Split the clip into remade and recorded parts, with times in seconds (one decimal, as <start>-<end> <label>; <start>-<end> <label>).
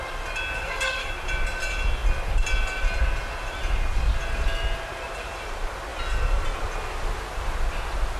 0.0-0.6 recorded; 0.6-1.1 remade; 1.1-8.2 recorded